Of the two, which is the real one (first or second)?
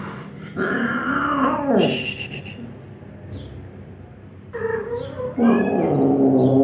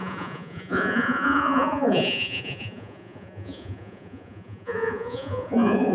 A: first